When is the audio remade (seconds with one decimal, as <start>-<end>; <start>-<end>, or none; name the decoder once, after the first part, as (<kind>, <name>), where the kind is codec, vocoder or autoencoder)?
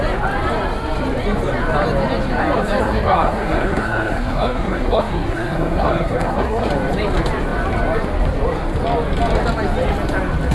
2.8-6.7 (codec, SNAC)